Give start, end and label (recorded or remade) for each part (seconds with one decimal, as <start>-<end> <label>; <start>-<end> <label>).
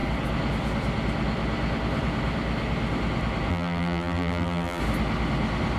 0.0-3.5 recorded; 3.5-4.8 remade; 4.8-5.8 recorded